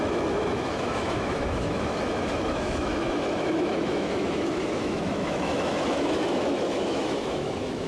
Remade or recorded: remade